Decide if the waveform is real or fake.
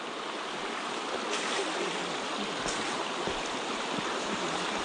real